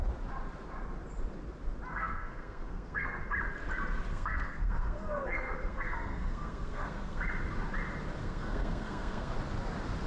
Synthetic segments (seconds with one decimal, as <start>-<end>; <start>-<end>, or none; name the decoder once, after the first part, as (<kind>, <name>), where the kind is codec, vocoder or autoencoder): 1.9-3.2 (codec, SNAC); 4.1-7.2; 8.2-9.3